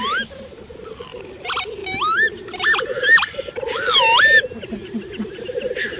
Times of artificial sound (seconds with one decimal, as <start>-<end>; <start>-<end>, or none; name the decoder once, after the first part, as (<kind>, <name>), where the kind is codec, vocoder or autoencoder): none